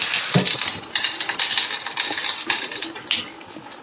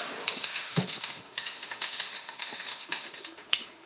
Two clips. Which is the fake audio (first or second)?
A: second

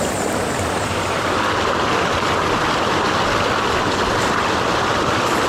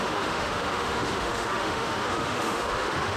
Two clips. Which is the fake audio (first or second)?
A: second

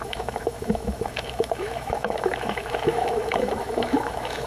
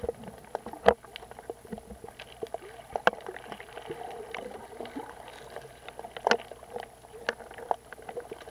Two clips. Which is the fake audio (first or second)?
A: first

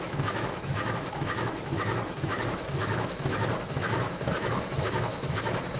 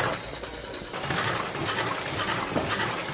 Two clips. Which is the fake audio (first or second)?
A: first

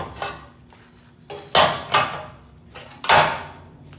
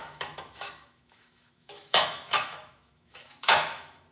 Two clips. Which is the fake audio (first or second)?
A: second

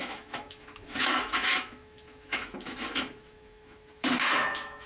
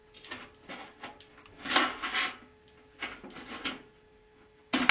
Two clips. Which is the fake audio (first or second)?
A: first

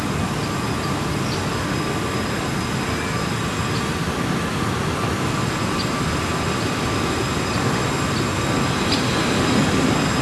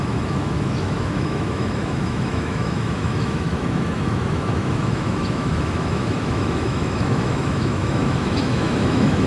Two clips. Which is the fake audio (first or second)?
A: second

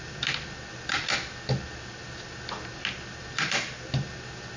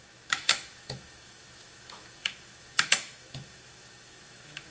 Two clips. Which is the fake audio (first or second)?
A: second